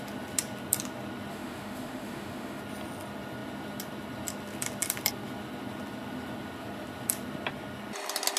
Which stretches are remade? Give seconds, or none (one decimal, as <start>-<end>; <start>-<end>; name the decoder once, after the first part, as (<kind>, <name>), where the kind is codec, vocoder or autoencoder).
1.3-2.6 (autoencoder, DAC-VAE)